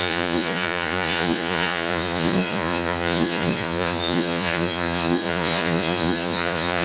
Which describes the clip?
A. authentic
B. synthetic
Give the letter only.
B